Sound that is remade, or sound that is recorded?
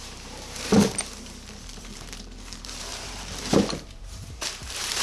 remade